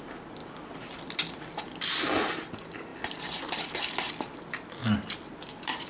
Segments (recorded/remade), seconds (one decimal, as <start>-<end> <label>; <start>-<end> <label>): 0.0-5.9 recorded

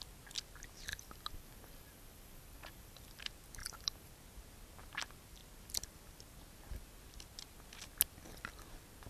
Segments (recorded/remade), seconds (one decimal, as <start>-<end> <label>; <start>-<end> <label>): 0.0-0.9 recorded; 0.9-3.2 remade; 3.2-3.6 recorded; 3.6-4.1 remade; 4.1-9.1 recorded

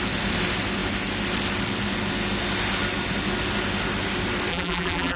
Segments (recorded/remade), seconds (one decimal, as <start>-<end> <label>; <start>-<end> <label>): 0.0-4.5 recorded; 4.5-5.2 remade

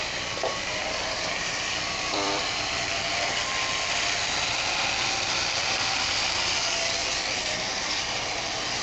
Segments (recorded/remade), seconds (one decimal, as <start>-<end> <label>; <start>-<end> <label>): 0.0-8.8 remade

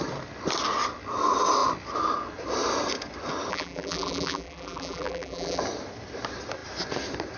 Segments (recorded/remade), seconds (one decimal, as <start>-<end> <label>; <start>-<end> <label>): 0.0-3.5 recorded; 3.5-5.6 remade; 5.6-7.4 recorded

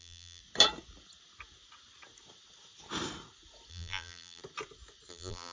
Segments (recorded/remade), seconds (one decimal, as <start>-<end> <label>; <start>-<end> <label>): 0.0-0.4 remade; 0.4-3.7 recorded; 3.7-4.4 remade; 4.4-5.1 recorded; 5.1-5.5 remade